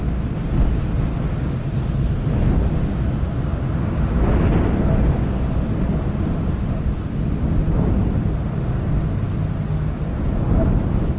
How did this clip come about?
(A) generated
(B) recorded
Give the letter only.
B